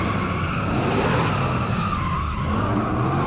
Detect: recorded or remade recorded